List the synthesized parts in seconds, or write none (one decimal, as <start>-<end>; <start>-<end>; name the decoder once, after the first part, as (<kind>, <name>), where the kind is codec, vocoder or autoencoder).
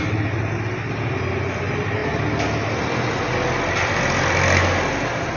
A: none